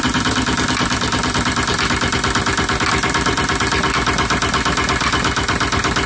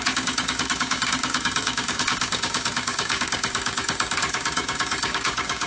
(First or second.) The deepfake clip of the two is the second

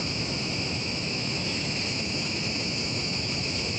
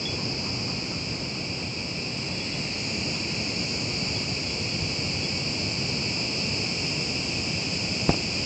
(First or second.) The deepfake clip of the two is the first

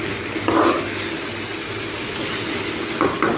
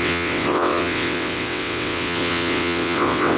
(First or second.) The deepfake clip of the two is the second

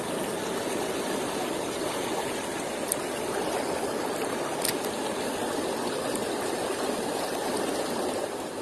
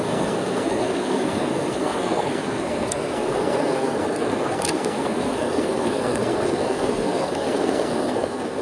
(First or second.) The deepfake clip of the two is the second